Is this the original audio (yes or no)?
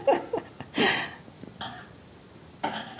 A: yes